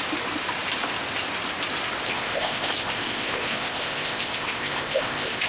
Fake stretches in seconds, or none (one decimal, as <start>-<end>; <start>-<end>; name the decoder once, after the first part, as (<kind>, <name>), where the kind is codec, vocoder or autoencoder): 2.0-5.5 (codec, ZipCodec)